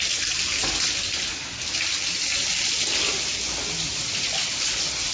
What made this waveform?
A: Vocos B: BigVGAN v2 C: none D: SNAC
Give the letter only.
C